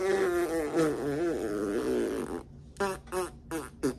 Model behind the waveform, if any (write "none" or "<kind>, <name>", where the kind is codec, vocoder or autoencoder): none